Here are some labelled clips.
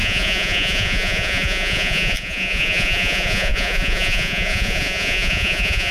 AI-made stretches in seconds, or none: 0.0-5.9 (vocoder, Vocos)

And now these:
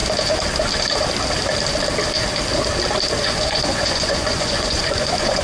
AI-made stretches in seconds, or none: 3.2-5.4 (vocoder, Vocos)